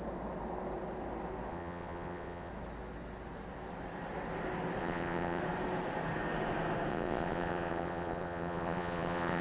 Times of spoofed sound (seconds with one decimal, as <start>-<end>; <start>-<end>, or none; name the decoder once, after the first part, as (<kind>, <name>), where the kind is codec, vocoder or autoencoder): 1.5-2.5 (vocoder, Vocos); 4.8-5.4; 6.9-9.4